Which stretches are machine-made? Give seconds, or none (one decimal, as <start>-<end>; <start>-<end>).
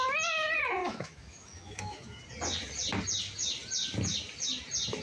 0.8-2.2